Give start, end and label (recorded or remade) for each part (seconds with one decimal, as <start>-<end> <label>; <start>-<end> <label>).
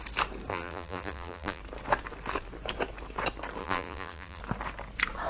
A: 0.0-0.5 recorded; 0.5-1.6 remade; 1.6-3.6 recorded; 3.6-4.4 remade; 4.4-5.3 recorded